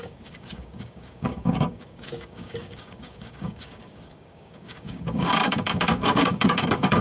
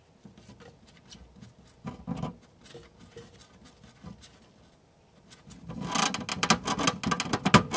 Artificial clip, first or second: first